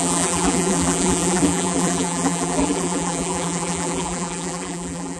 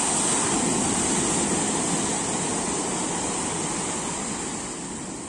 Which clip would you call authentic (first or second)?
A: second